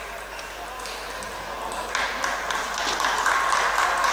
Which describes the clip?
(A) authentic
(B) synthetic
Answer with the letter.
A